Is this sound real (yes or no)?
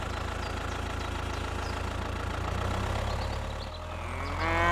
yes